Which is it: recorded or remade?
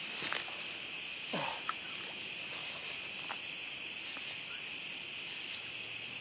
recorded